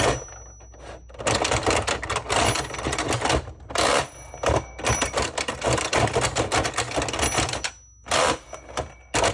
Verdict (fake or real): real